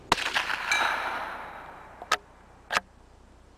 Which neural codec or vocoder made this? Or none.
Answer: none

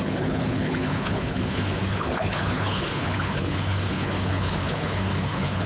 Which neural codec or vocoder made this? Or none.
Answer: codec, HILCodec